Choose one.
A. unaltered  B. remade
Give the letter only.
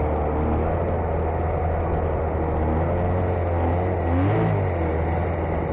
A